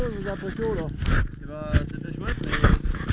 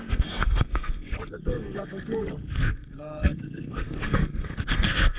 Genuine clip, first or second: first